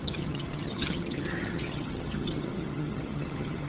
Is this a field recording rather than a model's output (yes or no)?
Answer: no